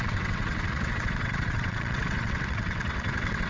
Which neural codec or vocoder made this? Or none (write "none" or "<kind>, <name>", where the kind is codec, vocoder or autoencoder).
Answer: vocoder, WaveNeXt